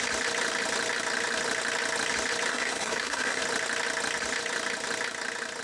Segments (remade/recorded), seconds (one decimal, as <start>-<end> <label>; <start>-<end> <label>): 0.0-2.5 recorded; 2.5-3.4 remade; 3.4-5.6 recorded